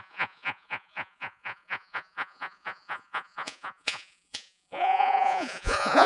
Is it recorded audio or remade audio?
remade